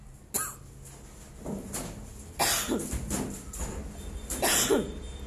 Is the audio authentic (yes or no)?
yes